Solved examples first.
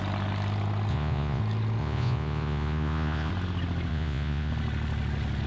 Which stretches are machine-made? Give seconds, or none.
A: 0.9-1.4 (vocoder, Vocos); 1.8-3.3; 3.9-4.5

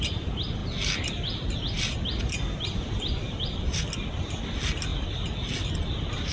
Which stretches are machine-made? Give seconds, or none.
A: none

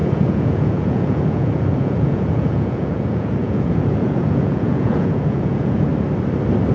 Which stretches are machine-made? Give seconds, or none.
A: 0.0-5.9 (vocoder, Vocos)

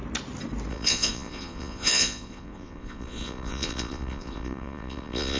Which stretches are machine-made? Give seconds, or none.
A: 0.7-5.4 (vocoder, Vocos)

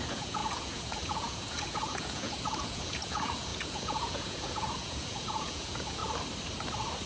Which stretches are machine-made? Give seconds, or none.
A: 0.0-6.0 (vocoder, Vocos)

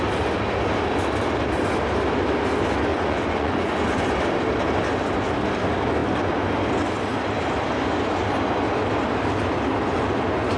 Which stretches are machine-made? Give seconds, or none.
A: 2.9-3.8 (vocoder, Vocos)

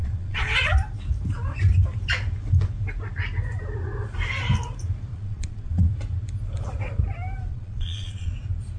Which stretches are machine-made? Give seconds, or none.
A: 0.0-0.7 (vocoder, Vocos); 5.1-5.9; 7.5-8.3